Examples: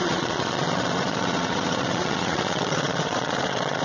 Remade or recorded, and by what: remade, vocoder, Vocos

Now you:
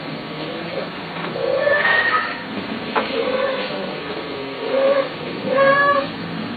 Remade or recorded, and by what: remade, codec, SNAC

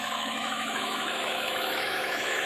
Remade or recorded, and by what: remade, autoencoder, DAC-VAE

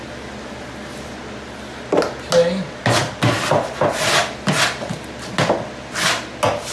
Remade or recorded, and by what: recorded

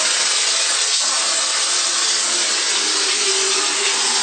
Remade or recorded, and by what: recorded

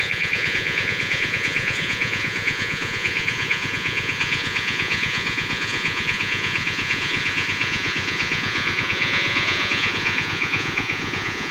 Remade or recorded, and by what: remade, vocoder, Vocos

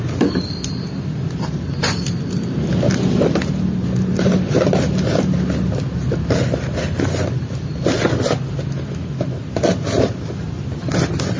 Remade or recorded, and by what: recorded